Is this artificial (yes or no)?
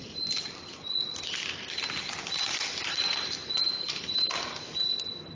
no